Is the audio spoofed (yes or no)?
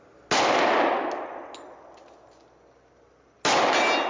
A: no